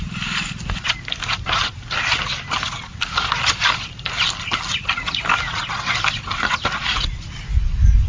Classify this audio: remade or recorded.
recorded